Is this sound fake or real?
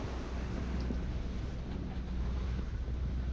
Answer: real